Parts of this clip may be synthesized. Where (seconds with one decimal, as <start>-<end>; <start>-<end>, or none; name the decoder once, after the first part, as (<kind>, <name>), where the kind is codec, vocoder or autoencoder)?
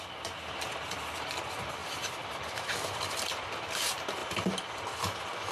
1.8-3.5 (vocoder, BigVGAN v2); 4.2-4.8